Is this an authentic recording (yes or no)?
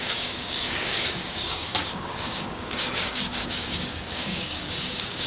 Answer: no